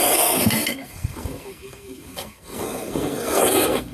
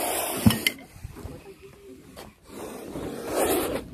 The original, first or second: second